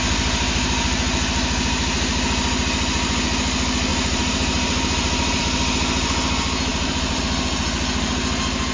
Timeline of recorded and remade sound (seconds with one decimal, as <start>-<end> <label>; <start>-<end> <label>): 0.0-3.9 recorded; 3.9-5.4 remade; 5.4-6.7 recorded; 6.7-7.2 remade; 7.2-8.7 recorded